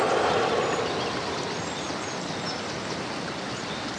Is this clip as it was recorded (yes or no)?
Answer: yes